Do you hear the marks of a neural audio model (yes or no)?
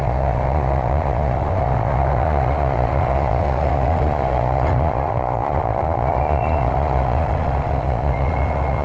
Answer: yes